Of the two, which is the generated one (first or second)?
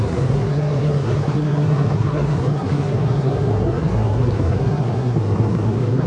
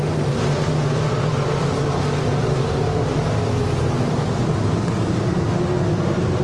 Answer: first